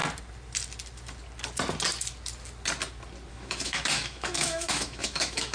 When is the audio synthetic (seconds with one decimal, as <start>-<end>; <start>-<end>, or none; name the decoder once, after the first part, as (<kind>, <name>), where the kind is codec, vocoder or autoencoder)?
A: 3.3-5.5 (autoencoder, DAC-VAE)